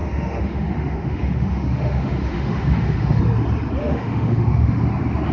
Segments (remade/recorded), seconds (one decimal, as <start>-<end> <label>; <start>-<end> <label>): 0.0-3.2 remade; 3.2-3.8 recorded; 3.8-4.8 remade; 4.8-5.3 recorded